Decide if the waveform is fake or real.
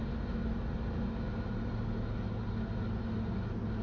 real